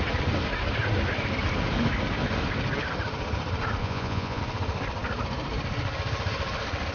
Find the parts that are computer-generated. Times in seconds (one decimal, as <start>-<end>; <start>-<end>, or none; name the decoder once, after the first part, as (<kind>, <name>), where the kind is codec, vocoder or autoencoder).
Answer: 3.8-4.4 (vocoder, Vocos)